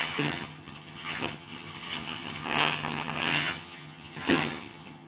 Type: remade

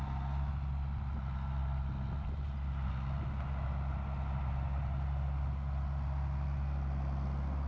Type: recorded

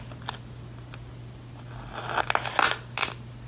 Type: recorded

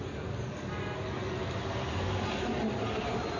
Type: recorded